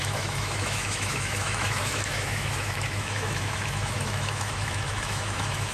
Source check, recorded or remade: remade